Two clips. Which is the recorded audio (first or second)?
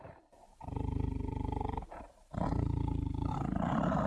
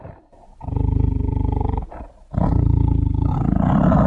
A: second